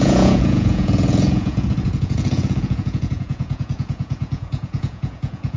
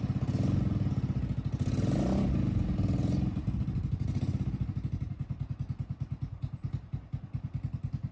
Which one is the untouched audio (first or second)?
second